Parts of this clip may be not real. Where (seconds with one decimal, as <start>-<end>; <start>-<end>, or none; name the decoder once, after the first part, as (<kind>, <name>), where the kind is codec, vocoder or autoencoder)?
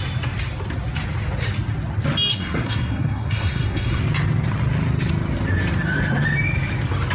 2.3-4.0 (codec, SNAC)